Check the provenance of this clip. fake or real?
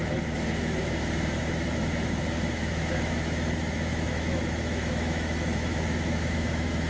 fake